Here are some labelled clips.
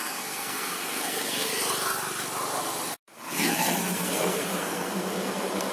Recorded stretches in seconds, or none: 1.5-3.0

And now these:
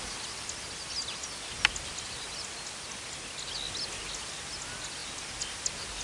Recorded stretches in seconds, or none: 0.0-6.0

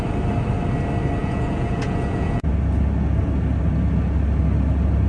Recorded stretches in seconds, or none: 0.0-1.2; 2.5-5.1

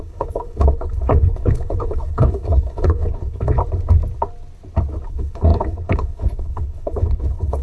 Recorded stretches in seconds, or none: 3.6-5.1

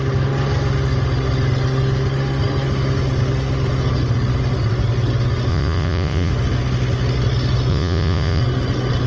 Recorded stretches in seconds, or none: 0.0-5.5; 6.3-7.7; 8.4-9.1

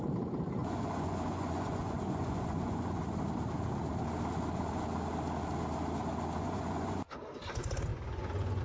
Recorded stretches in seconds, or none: 0.0-0.6; 3.0-6.4; 7.0-7.9